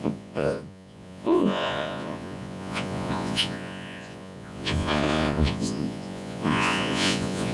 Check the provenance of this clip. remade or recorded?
remade